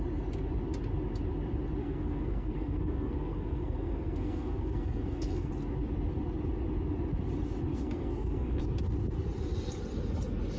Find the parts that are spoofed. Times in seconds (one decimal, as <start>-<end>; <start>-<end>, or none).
1.8-5.5; 7.7-8.6